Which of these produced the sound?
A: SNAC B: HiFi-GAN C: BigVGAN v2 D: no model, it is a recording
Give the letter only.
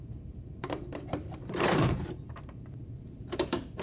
C